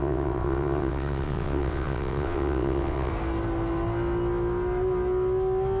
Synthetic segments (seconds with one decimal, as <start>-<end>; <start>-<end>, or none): 0.0-3.1